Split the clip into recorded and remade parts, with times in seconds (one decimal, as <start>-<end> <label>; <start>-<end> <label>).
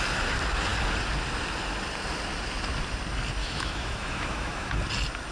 0.0-3.4 recorded; 3.4-4.8 remade; 4.8-5.3 recorded